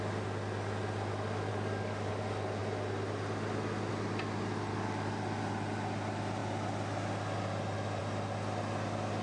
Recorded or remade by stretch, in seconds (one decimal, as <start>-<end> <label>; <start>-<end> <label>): 0.0-1.5 recorded; 1.5-2.1 remade; 2.1-4.7 recorded; 4.7-5.2 remade; 5.2-9.2 recorded